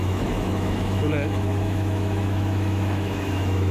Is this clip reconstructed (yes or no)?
yes